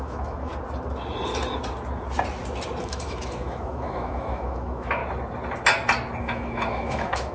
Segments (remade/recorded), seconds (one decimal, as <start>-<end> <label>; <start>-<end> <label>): 0.0-0.5 remade; 0.5-2.8 recorded; 2.8-5.0 remade; 5.0-6.2 recorded; 6.2-7.3 remade

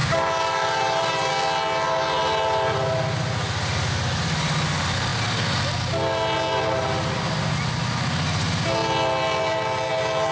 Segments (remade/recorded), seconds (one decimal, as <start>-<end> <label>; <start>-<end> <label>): 0.0-1.3 remade; 1.3-10.3 recorded

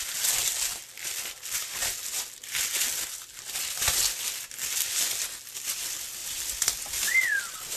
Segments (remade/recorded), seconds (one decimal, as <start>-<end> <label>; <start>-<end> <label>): 0.0-6.2 recorded; 6.2-7.8 remade

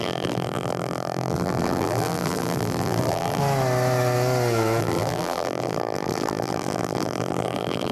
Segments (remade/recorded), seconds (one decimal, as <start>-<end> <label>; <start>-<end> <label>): 0.0-3.4 remade; 3.4-4.8 recorded; 4.8-7.9 remade

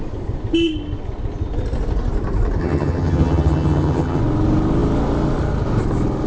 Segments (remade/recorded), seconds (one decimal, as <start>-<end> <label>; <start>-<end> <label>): 0.0-2.6 recorded; 2.6-4.2 remade; 4.2-6.3 recorded

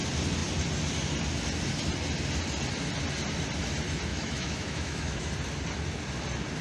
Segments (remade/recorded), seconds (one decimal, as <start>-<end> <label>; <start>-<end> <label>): 0.0-4.1 recorded; 4.1-5.3 remade; 5.3-6.6 recorded